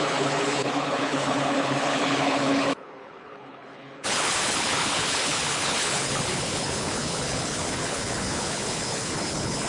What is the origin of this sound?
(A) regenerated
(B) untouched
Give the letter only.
A